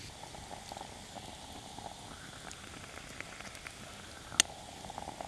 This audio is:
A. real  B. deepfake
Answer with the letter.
A